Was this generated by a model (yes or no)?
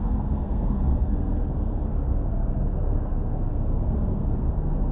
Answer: yes